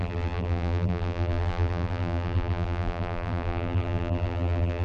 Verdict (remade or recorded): remade